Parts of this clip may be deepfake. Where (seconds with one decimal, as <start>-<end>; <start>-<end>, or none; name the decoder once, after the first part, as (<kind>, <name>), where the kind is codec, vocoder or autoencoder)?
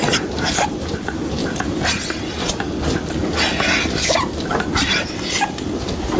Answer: none